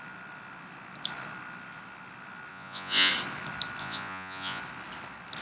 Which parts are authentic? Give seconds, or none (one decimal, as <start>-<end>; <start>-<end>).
0.0-2.5; 3.1-3.8; 4.6-5.4